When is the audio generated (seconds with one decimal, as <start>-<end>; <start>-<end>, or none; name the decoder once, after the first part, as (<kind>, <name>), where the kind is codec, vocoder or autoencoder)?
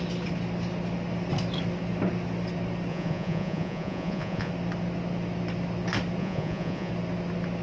2.9-4.5 (vocoder, Vocos); 6.2-6.9